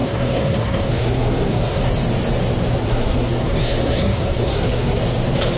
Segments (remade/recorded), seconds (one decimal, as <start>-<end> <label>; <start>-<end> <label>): 0.0-1.9 remade; 1.9-2.8 recorded; 2.8-5.0 remade; 5.0-5.6 recorded